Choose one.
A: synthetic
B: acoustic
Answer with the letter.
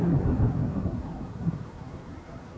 A